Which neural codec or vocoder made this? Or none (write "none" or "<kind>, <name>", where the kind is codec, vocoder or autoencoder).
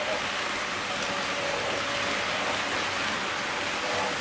none